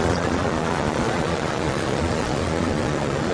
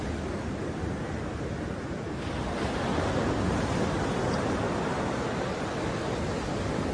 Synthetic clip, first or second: first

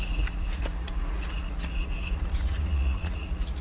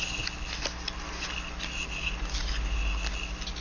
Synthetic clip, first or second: first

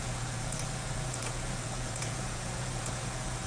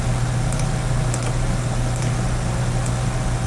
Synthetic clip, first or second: first